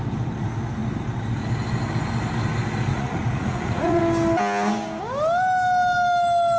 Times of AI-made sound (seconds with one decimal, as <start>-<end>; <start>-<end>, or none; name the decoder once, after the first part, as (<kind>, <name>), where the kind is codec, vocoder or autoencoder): 2.9-4.0 (vocoder, Vocos)